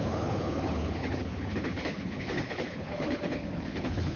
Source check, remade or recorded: remade